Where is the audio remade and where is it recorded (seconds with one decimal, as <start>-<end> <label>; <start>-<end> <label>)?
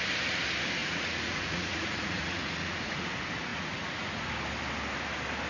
0.0-0.8 recorded; 0.8-3.1 remade; 3.1-3.5 recorded; 3.5-4.3 remade; 4.3-5.5 recorded